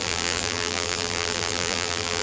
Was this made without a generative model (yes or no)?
no